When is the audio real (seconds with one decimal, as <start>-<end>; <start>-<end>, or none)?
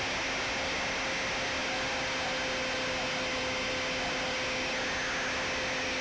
0.0-6.0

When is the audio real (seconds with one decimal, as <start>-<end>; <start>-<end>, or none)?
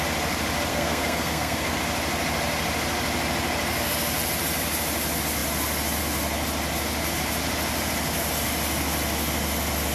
0.0-0.7; 1.8-9.9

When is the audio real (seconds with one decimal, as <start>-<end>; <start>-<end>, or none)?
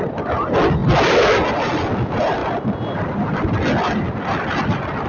0.0-5.1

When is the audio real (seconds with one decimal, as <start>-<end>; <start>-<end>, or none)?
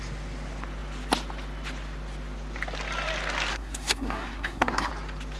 0.0-3.5; 4.9-5.4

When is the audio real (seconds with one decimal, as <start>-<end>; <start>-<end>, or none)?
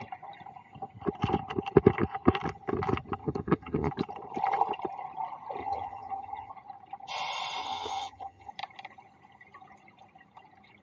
0.0-3.2; 3.9-5.6; 6.5-7.6; 8.5-10.8